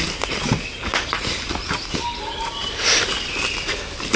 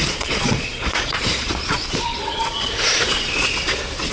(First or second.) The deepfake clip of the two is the second